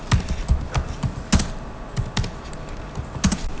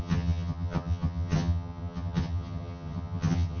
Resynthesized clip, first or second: second